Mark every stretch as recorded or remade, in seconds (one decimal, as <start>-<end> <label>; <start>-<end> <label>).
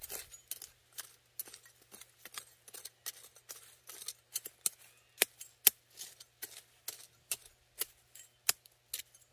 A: 0.0-9.3 recorded